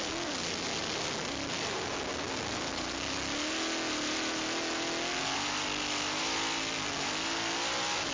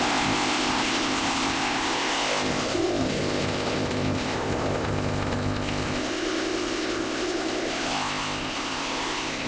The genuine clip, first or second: first